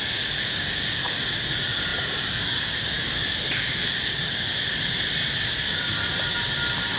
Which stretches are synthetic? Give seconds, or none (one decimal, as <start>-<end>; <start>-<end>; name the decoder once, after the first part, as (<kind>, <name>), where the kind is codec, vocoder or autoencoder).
0.0-4.7 (codec, DAC); 5.6-6.0